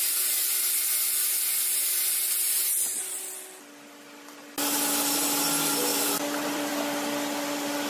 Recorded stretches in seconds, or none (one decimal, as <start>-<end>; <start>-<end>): 0.0-1.5; 3.0-5.9; 6.7-7.9